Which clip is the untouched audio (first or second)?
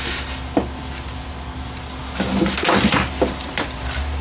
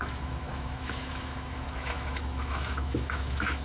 first